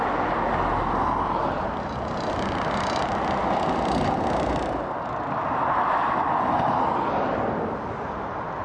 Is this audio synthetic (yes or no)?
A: no